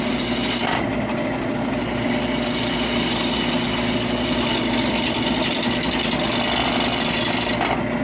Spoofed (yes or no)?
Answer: no